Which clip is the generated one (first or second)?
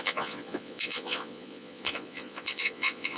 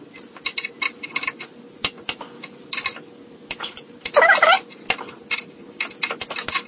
first